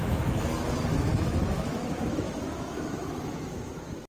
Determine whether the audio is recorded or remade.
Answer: remade